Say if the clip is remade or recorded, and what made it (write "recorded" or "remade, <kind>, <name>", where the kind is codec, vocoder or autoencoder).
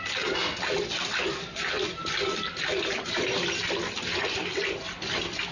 recorded